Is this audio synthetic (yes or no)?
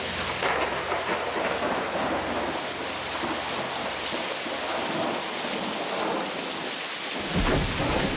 no